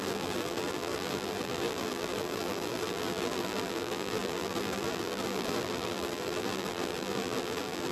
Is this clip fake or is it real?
fake